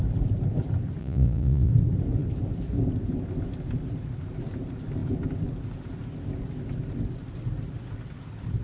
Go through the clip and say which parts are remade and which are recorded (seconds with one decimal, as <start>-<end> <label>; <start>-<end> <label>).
0.0-1.0 recorded; 1.0-1.7 remade; 1.7-8.6 recorded

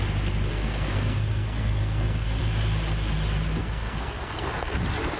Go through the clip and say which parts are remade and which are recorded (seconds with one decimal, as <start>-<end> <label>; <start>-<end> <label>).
0.0-0.5 recorded; 0.5-2.4 remade; 2.4-3.6 recorded; 3.6-4.8 remade; 4.8-5.2 recorded

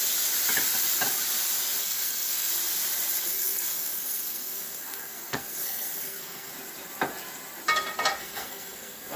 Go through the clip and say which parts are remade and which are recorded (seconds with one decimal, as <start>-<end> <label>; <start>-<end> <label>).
0.0-1.8 recorded; 1.8-2.5 remade; 2.5-3.2 recorded; 3.2-6.5 remade; 6.5-8.2 recorded; 8.2-9.2 remade

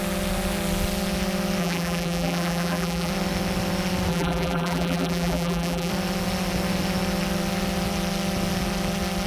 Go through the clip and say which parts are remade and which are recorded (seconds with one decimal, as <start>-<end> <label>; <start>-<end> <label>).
0.0-1.6 recorded; 1.6-3.1 remade; 3.1-4.1 recorded; 4.1-5.9 remade; 5.9-9.3 recorded